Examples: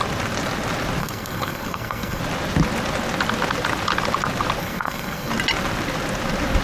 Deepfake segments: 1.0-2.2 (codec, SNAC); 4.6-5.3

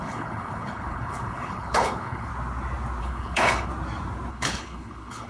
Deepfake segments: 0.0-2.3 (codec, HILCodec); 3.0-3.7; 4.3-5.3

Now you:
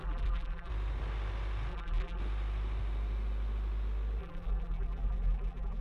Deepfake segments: 0.0-0.7 (vocoder, BigVGAN v2); 1.7-2.2; 4.2-5.8

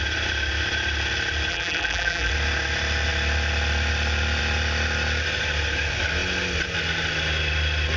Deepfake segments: 1.5-2.3 (vocoder, BigVGAN v2)